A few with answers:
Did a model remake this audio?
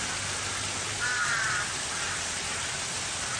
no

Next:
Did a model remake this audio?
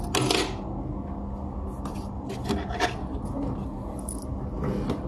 no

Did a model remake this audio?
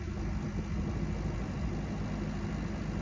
no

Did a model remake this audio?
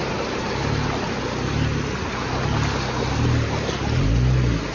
no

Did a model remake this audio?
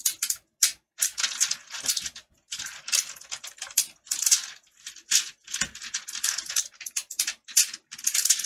no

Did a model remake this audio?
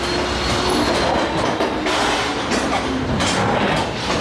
no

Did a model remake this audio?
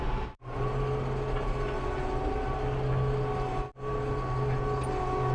no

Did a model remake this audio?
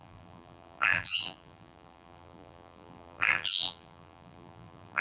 yes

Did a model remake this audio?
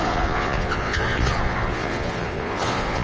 yes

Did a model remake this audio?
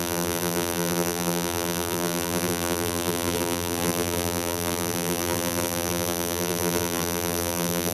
yes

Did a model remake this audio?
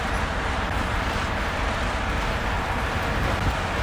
no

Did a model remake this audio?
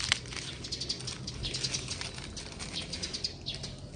no